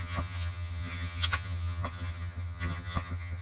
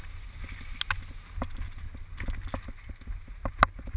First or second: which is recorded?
second